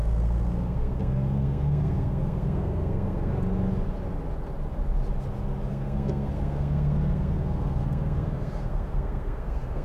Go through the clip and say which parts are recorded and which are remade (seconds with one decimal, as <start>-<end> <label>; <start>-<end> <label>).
0.0-3.3 remade; 3.3-5.7 recorded; 5.7-9.8 remade